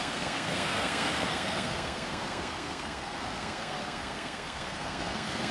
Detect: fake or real fake